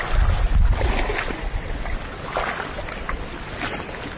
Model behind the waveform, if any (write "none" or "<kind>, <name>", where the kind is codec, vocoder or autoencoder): none